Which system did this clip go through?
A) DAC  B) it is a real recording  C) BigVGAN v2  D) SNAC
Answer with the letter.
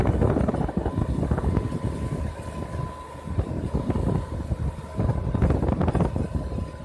B